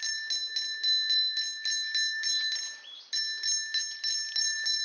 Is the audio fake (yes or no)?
no